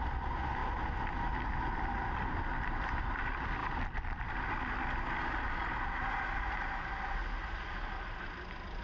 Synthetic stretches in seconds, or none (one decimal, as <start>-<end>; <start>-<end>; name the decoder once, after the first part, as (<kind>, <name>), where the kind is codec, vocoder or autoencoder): none